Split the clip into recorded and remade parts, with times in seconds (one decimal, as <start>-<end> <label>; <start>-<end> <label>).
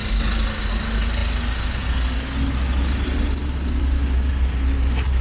0.0-5.2 recorded